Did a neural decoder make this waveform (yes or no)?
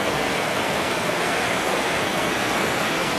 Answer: yes